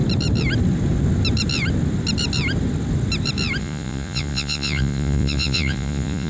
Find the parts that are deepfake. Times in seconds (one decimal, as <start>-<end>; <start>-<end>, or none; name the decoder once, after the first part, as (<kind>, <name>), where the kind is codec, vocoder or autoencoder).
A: 3.6-6.3 (vocoder, Vocos)